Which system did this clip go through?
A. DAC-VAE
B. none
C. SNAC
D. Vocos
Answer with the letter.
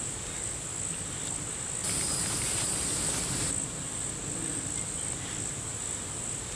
B